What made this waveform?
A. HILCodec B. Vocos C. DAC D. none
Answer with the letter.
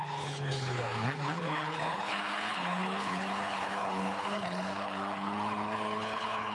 A